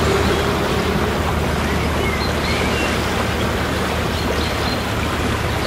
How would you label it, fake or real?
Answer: real